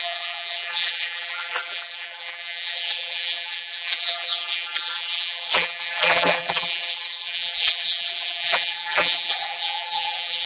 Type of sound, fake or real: fake